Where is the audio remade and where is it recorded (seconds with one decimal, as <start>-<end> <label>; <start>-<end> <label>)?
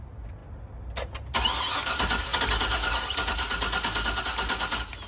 0.0-5.1 recorded